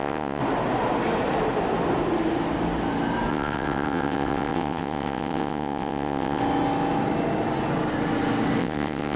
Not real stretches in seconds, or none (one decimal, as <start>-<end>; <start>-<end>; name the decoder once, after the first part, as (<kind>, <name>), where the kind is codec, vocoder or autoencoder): 0.0-0.4 (vocoder, WaveNeXt); 3.3-6.4; 8.6-9.2